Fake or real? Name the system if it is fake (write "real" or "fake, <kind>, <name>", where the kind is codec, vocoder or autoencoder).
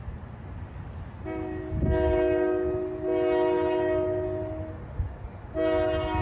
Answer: real